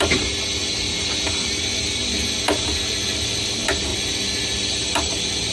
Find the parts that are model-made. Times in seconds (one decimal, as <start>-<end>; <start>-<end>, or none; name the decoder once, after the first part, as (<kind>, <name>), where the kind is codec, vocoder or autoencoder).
none